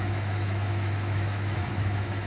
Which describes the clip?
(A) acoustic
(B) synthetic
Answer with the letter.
B